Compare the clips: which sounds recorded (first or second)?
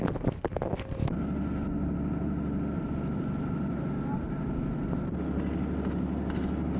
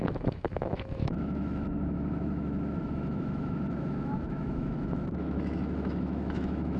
first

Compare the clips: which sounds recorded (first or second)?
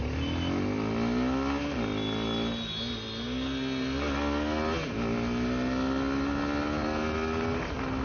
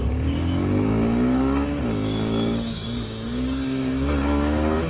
first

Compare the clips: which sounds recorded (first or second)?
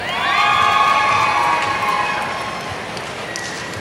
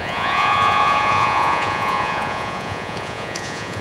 first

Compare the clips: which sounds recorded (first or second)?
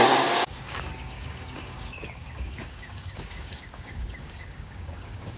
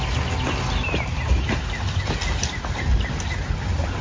second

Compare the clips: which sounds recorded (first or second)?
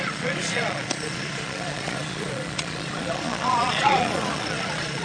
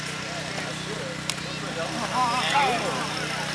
second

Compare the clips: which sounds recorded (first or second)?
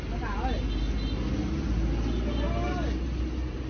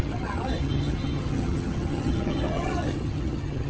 first